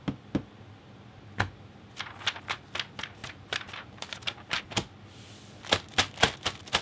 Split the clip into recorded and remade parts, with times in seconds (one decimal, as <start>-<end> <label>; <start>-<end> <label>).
0.0-3.2 recorded; 3.2-4.6 remade; 4.6-6.8 recorded